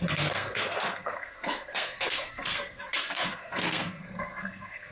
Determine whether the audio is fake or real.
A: fake